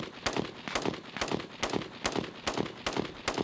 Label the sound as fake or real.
real